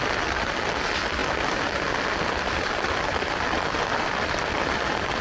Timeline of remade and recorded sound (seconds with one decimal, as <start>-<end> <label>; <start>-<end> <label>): 0.0-5.2 recorded

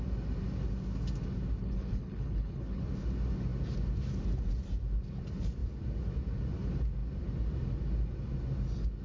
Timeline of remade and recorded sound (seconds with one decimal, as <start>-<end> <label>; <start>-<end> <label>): 0.0-1.6 recorded; 1.6-2.8 remade; 2.8-9.0 recorded

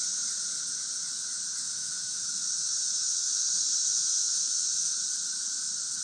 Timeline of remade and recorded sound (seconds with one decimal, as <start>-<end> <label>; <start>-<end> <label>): 0.0-1.6 recorded; 1.6-5.0 remade; 5.0-6.0 recorded

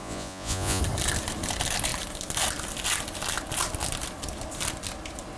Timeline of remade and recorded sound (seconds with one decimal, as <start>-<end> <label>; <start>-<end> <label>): 0.0-0.8 remade; 0.8-5.4 recorded

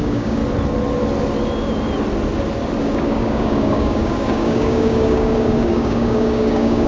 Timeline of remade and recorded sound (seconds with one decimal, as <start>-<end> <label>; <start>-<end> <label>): 0.0-0.4 remade; 0.4-2.8 recorded; 2.8-6.9 remade

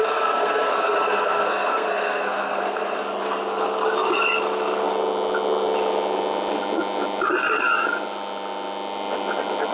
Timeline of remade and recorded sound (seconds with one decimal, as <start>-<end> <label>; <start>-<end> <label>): 0.0-3.0 remade; 3.0-9.7 recorded

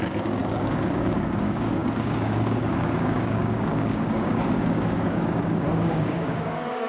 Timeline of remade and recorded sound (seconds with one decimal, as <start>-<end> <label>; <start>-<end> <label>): 0.0-6.9 remade